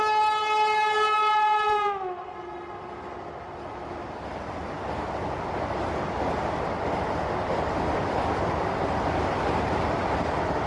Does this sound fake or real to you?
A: real